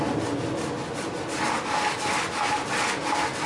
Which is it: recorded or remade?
recorded